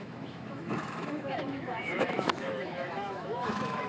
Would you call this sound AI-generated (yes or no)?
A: yes